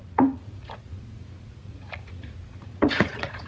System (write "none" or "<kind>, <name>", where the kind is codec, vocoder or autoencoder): vocoder, Vocos